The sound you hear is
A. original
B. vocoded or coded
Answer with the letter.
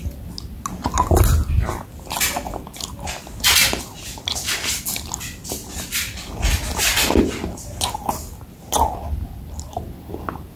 A